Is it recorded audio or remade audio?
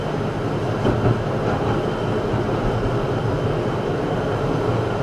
recorded